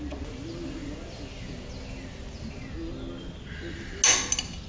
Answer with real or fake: real